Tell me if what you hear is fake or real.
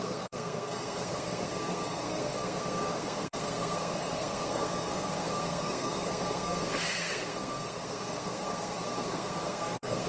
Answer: fake